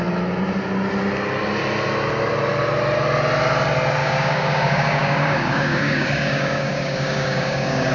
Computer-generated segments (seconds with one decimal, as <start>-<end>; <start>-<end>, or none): 4.0-7.9